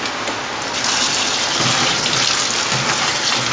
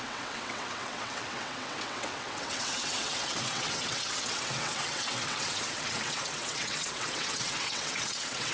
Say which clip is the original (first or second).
first